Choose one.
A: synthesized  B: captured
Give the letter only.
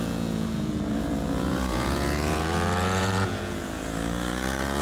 A